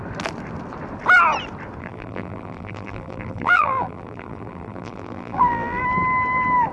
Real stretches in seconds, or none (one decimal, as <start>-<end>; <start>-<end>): 0.0-1.8; 5.8-6.7